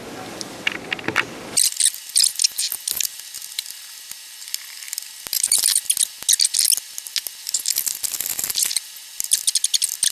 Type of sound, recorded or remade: recorded